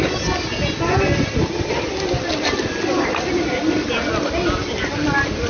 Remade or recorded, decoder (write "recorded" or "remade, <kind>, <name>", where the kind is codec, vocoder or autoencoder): recorded